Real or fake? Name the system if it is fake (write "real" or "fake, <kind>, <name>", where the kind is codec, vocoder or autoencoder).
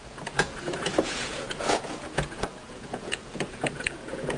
fake, vocoder, Vocos